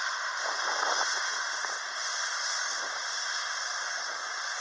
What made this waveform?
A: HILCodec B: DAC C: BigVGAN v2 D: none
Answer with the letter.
D